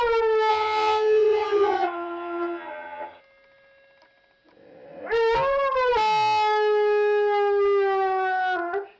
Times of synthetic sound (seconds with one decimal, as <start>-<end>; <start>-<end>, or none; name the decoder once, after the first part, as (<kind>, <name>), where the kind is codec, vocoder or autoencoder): 0.5-3.2 (vocoder, HiFi-GAN)